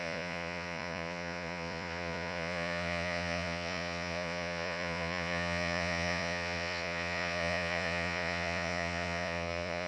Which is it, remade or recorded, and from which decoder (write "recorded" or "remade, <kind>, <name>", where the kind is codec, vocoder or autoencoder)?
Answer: remade, vocoder, Vocos